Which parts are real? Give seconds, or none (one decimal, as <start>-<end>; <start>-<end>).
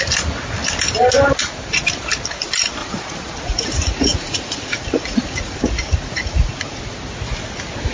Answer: 0.0-2.8; 6.8-7.9